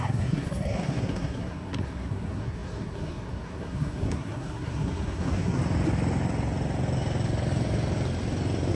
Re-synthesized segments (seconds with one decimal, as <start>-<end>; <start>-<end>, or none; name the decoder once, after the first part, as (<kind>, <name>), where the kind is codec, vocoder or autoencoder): 0.0-5.6 (codec, SNAC)

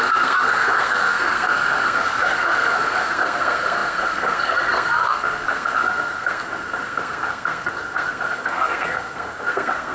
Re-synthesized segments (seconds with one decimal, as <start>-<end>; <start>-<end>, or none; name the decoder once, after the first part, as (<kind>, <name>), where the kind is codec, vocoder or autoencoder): 0.0-9.9 (codec, SNAC)

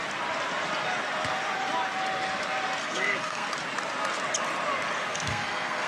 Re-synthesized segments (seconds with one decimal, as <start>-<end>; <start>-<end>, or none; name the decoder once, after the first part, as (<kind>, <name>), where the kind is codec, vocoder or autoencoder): 2.8-3.5 (codec, SNAC); 5.0-5.9

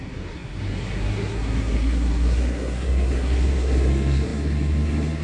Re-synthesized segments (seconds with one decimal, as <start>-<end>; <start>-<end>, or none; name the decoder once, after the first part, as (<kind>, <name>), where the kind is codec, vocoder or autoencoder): 0.0-5.2 (codec, SNAC)

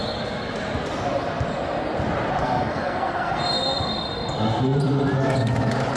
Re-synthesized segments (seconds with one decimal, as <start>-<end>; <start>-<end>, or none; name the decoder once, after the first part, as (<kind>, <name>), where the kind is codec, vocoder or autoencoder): 2.4-3.4 (codec, SNAC)

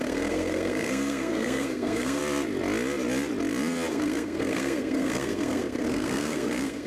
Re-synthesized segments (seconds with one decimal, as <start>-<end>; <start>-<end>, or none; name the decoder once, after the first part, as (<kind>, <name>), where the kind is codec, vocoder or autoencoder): 0.0-2.2 (codec, SNAC); 3.9-6.9

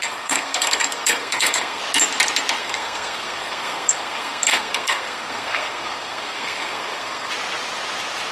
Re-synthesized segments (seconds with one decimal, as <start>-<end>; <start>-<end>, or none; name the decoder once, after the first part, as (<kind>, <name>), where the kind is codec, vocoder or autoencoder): 0.0-1.8 (codec, SNAC); 2.6-7.3

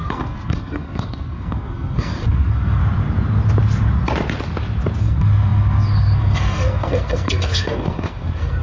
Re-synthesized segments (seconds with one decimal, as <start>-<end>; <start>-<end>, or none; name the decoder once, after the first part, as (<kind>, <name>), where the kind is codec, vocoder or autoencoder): 0.0-2.8 (codec, SNAC); 5.0-8.6